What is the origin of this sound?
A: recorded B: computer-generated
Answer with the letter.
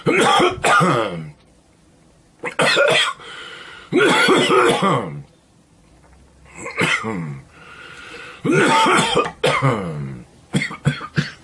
A